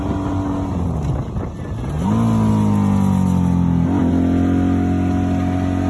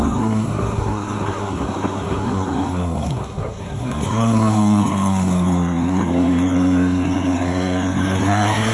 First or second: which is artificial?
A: second